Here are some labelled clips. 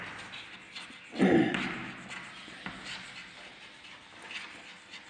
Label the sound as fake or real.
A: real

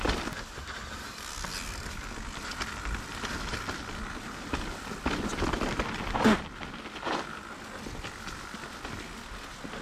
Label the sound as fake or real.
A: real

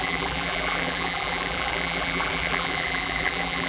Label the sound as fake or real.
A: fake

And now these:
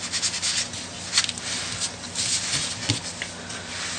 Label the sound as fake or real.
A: real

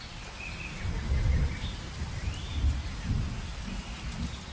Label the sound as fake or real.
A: real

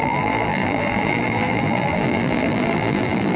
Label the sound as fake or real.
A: fake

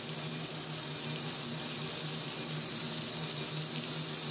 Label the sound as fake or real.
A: real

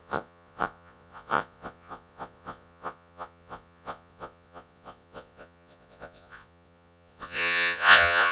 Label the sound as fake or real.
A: fake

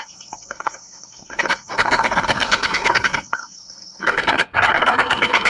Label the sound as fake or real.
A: fake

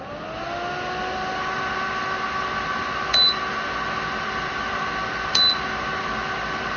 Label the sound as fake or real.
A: real